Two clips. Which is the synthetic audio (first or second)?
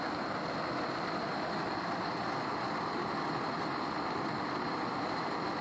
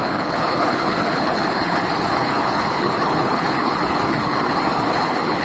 second